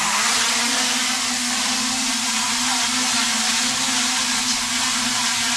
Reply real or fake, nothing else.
real